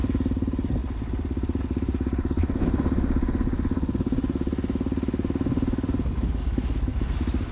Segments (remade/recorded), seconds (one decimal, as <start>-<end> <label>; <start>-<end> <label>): 0.0-0.8 recorded; 0.8-1.6 remade; 1.6-7.5 recorded